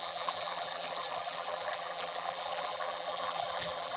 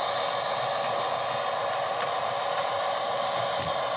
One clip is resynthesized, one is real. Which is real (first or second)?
second